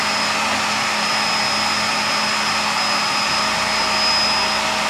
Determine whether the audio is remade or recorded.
recorded